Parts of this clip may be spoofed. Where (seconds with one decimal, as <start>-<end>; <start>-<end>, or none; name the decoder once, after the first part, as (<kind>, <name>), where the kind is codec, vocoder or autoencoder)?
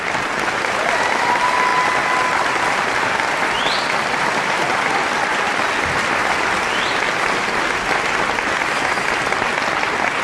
none